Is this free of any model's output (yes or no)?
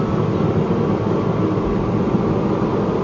yes